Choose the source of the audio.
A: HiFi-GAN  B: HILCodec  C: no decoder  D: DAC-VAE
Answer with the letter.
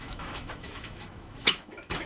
D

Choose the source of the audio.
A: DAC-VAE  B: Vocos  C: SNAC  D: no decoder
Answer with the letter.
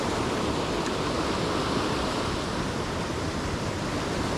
D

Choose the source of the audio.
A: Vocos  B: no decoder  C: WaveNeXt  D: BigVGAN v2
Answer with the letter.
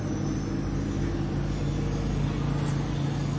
B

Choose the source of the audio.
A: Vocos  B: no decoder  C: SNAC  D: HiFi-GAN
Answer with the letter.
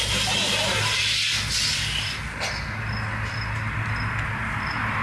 B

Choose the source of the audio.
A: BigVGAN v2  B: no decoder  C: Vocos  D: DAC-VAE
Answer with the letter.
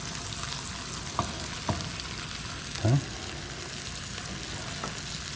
B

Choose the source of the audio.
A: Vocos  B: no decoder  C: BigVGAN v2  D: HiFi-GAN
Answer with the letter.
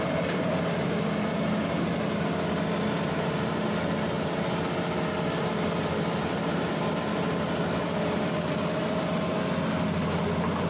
B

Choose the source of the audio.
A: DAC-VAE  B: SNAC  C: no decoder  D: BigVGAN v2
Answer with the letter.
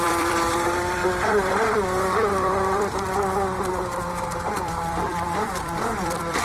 D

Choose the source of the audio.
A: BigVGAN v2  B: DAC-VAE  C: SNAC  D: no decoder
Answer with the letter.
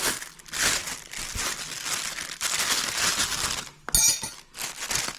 D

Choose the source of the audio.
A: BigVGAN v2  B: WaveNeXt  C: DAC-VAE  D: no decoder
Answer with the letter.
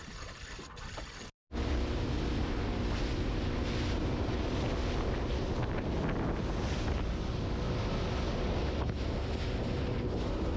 D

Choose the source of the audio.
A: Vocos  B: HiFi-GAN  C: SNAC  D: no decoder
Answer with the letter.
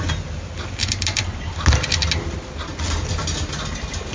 D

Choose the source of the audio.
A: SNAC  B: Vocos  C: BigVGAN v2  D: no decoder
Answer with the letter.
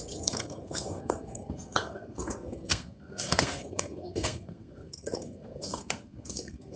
A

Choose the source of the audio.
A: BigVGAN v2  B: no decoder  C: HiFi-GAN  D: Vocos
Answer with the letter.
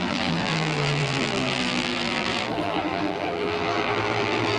A